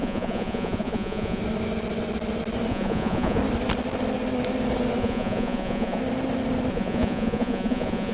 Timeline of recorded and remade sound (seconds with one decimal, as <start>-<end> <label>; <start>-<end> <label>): 0.0-1.4 remade; 1.4-2.7 recorded; 2.7-3.4 remade; 3.4-5.0 recorded; 5.0-6.0 remade; 6.0-6.7 recorded; 6.7-8.1 remade